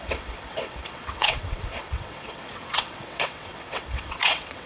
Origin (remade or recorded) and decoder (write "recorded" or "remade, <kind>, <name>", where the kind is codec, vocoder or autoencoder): remade, vocoder, WaveNeXt